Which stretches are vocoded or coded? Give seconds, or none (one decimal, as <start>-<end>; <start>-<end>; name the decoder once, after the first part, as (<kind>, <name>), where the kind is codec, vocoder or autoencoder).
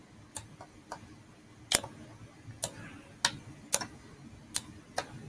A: none